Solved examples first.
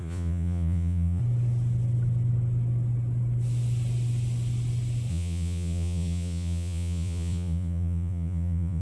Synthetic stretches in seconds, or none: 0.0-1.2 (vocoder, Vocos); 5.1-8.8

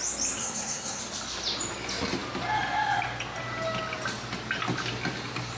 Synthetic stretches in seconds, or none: 0.4-1.0 (codec, SNAC)

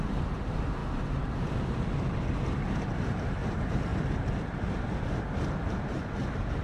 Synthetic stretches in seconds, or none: 0.0-6.6 (vocoder, BigVGAN v2)

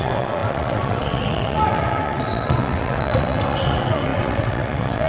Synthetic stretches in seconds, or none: 0.0-5.1 (vocoder, WaveNeXt)

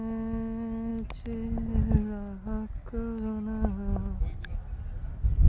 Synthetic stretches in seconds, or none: none

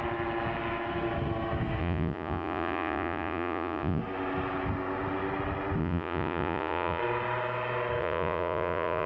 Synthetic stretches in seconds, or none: 1.8-4.0 (vocoder, Vocos); 5.8-7.0; 8.0-9.1